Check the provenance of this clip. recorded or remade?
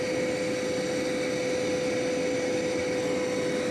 recorded